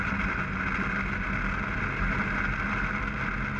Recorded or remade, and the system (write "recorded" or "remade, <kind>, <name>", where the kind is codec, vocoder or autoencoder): recorded